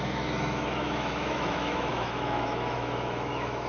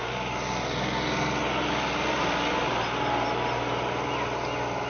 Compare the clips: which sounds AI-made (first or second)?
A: first